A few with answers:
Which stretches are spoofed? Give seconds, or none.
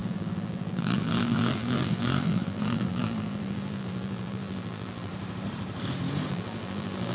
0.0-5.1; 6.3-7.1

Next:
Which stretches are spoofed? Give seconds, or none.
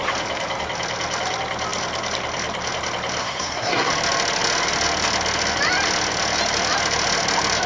3.2-3.9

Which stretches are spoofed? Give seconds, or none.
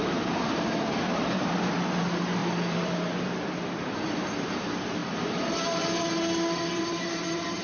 0.0-7.6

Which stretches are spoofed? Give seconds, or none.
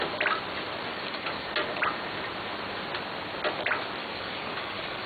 0.9-1.5; 4.0-5.1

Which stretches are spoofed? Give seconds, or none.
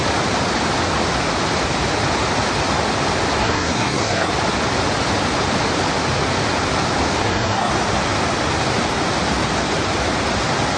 3.4-4.3; 7.2-7.7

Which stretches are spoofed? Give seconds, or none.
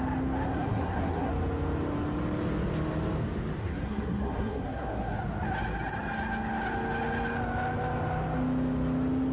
0.5-1.3; 3.6-5.2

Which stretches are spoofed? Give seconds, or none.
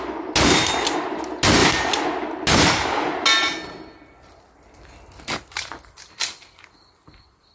none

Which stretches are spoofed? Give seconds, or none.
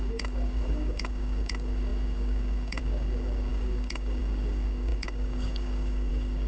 0.0-6.5